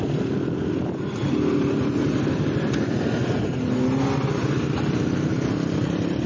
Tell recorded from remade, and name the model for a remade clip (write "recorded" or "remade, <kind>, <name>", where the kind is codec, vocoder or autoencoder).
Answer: recorded